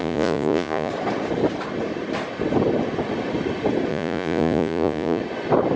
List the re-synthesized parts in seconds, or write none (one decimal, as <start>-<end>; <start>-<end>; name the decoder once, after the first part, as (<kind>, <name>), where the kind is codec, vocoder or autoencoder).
0.0-0.9 (vocoder, Vocos); 3.9-5.2